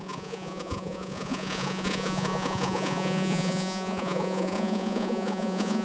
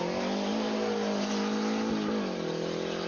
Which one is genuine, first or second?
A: second